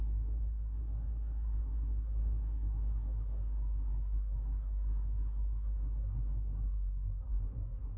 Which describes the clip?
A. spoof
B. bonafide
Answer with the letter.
A